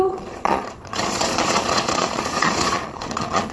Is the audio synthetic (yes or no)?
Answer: yes